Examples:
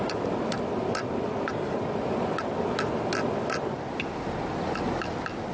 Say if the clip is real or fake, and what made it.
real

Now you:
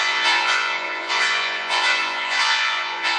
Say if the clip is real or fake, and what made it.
fake, vocoder, Vocos